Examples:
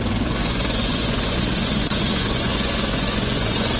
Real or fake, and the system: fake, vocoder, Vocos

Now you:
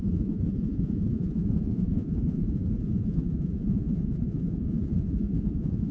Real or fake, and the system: fake, vocoder, Vocos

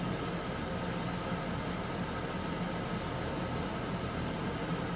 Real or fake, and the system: real